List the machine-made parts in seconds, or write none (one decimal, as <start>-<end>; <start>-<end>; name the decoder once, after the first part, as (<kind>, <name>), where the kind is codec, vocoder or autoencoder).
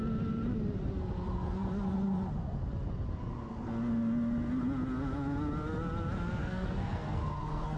6.4-7.8 (codec, SNAC)